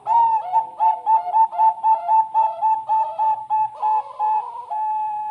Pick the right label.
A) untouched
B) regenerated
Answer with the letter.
B